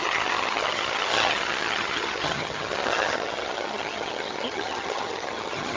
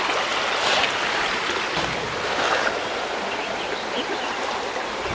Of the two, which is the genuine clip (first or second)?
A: second